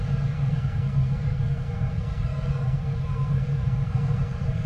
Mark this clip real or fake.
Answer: fake